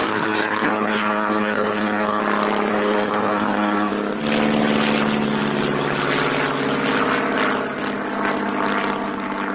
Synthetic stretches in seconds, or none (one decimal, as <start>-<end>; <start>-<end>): 0.0-2.2; 2.7-3.9